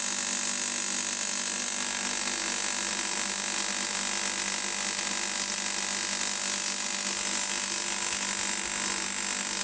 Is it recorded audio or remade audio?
recorded